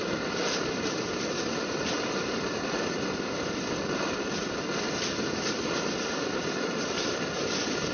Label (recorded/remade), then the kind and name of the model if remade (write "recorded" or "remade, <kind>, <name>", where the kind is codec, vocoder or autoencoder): remade, vocoder, BigVGAN v2